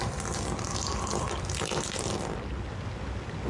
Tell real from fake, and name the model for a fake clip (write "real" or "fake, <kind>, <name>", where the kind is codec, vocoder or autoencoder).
real